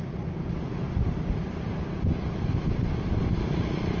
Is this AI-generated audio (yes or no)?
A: no